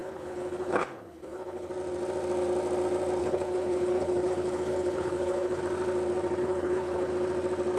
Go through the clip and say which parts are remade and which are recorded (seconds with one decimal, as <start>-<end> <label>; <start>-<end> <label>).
0.0-1.7 remade; 1.7-3.2 recorded; 3.2-5.6 remade; 5.6-6.4 recorded; 6.4-7.1 remade; 7.1-7.8 recorded

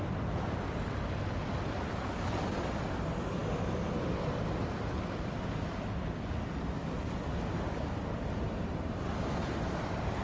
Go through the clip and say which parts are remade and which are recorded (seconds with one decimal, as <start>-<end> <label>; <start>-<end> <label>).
0.0-10.2 recorded

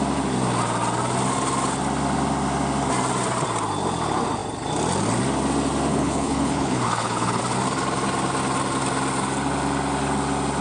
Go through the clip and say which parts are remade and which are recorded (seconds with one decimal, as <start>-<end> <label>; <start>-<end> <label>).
0.0-5.9 recorded; 5.9-7.4 remade; 7.4-10.6 recorded

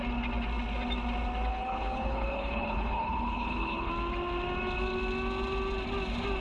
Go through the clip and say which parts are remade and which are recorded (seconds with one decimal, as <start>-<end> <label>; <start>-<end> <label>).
0.0-1.5 recorded; 1.5-3.9 remade; 3.9-6.4 recorded